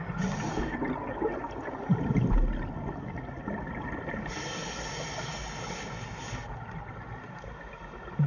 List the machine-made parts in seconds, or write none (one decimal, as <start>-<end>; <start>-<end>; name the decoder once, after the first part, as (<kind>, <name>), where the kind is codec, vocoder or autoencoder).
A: none